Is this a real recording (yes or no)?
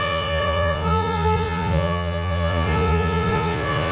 no